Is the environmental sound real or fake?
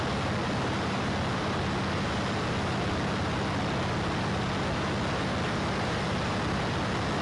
real